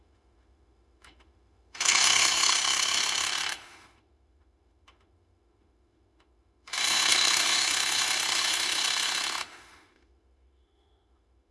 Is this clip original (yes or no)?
no